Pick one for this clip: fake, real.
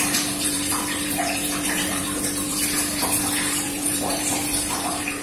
fake